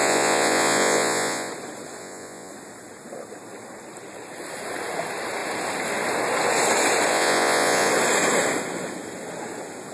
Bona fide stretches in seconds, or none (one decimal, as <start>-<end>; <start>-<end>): 1.5-2.0; 2.5-7.1; 7.9-9.9